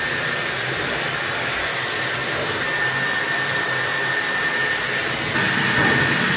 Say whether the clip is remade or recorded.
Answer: recorded